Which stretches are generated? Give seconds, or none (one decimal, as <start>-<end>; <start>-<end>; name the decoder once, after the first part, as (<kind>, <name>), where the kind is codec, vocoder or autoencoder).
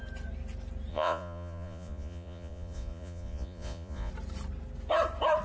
0.9-4.1 (vocoder, Vocos)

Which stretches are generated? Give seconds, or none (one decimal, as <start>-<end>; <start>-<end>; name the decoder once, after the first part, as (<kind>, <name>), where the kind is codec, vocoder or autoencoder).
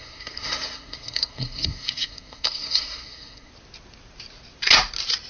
0.0-3.5 (codec, SNAC)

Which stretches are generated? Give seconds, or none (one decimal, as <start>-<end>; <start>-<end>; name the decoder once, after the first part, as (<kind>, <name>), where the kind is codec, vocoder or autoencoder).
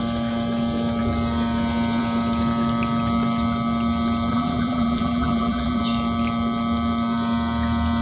4.3-5.8 (vocoder, BigVGAN v2)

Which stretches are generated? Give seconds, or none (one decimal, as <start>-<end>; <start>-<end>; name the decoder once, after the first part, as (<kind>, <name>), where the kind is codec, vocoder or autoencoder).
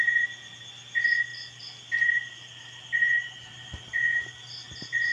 1.3-4.4 (vocoder, BigVGAN v2)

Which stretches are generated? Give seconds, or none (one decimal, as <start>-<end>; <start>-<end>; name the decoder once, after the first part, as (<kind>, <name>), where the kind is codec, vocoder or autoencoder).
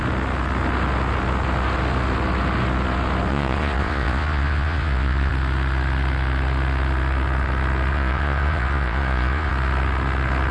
3.3-5.3 (vocoder, Vocos); 7.9-9.5